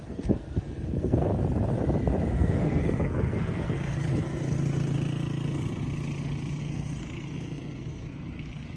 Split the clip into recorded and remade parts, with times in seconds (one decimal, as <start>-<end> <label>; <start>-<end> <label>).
0.0-1.3 remade; 1.3-2.3 recorded; 2.3-3.9 remade; 3.9-6.6 recorded; 6.6-8.8 remade